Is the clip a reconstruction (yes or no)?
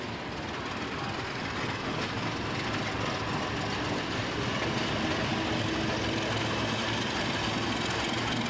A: no